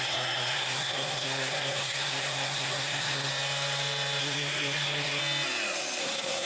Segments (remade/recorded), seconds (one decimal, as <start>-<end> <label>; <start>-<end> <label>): 0.0-3.3 remade; 3.3-4.2 recorded; 4.2-5.2 remade; 5.2-6.0 recorded; 6.0-6.5 remade